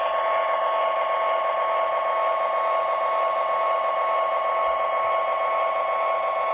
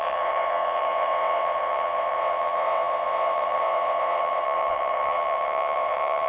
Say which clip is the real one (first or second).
first